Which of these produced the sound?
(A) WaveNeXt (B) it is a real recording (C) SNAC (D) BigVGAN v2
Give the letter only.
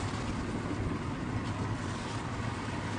B